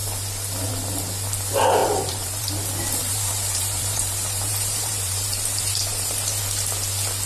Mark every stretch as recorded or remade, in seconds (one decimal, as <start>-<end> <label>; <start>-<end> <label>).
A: 0.0-1.8 recorded; 1.8-2.5 remade; 2.5-3.0 recorded; 3.0-6.4 remade; 6.4-7.3 recorded